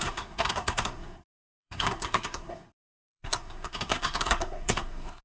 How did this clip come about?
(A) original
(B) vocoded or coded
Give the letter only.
B